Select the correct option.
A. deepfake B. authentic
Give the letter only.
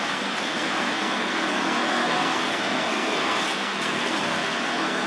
A